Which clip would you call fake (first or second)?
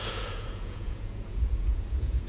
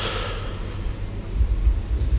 first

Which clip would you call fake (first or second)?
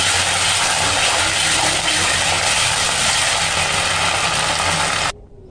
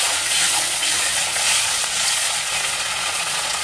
second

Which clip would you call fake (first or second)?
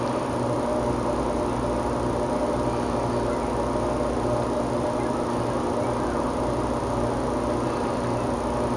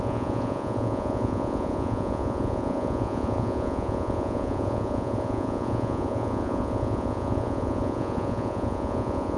second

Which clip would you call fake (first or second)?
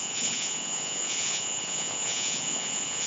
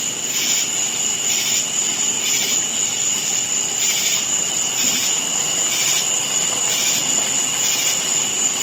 first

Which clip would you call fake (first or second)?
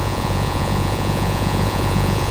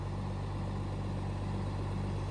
first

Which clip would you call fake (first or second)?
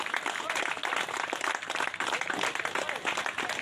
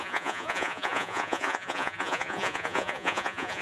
second